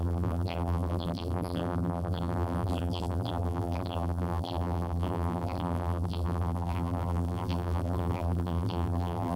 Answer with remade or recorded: remade